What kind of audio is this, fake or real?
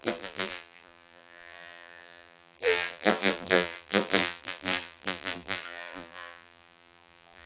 fake